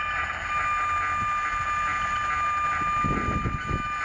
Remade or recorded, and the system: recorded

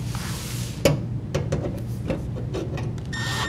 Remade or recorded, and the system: recorded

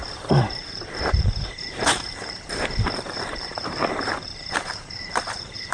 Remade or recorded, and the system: remade, vocoder, BigVGAN v2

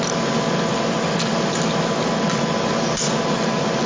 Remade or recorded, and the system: recorded